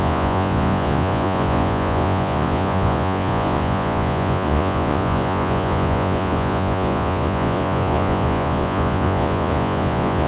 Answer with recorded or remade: remade